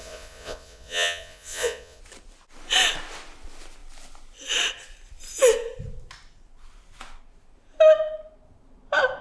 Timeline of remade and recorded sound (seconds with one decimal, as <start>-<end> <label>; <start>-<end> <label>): 0.0-2.0 remade; 2.0-9.2 recorded